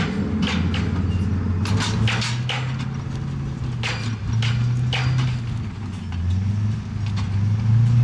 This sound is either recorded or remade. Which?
recorded